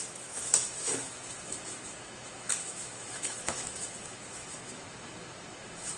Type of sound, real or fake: fake